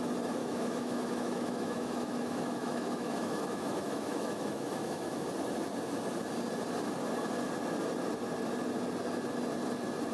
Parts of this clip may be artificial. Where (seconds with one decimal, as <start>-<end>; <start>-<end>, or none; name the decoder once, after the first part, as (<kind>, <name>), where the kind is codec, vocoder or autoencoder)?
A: 0.4-5.3 (autoencoder, DAC-VAE)